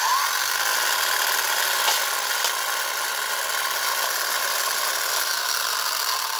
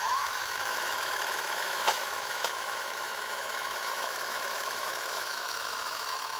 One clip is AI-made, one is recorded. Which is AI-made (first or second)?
second